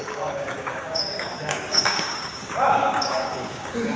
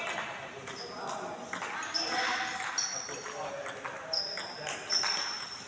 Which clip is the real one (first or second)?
second